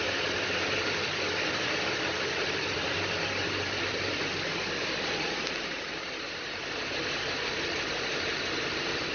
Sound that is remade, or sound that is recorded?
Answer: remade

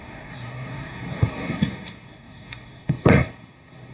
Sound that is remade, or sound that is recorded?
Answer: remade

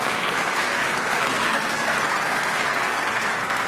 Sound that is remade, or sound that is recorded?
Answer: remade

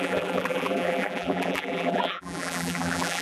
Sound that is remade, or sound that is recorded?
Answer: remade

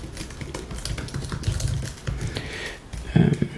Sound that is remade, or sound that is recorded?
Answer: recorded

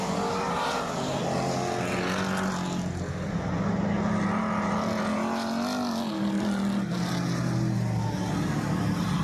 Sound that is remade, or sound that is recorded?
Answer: recorded